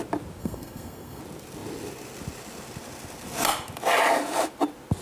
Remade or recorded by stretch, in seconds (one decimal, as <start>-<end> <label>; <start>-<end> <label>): 0.0-0.4 recorded; 0.4-1.2 remade; 1.2-5.0 recorded